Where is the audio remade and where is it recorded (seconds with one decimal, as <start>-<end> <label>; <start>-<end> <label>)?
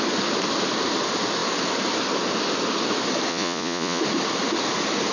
0.0-3.3 recorded; 3.3-4.0 remade; 4.0-5.1 recorded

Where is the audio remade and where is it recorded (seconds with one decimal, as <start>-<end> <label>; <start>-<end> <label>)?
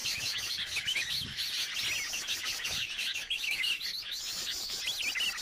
0.0-1.4 remade; 1.4-2.1 recorded; 2.1-4.8 remade; 4.8-5.4 recorded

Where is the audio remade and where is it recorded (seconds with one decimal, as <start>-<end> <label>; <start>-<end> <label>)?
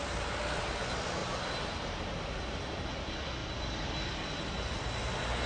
0.0-5.5 recorded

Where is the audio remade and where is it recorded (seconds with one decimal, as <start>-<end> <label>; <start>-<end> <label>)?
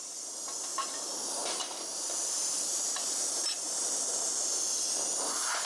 0.0-0.7 recorded; 0.7-4.1 remade; 4.1-5.7 recorded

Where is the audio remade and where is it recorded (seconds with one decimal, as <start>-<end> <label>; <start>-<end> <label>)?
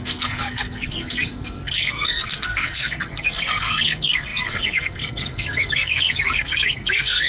0.0-7.3 remade